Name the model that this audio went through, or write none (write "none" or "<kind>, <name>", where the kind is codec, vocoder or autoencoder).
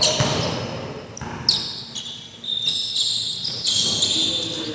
none